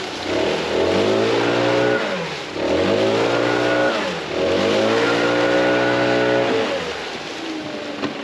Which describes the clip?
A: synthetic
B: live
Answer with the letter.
B